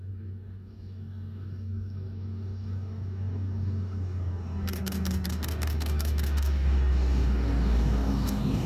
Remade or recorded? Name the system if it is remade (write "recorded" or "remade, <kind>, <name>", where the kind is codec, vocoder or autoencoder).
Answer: remade, codec, DAC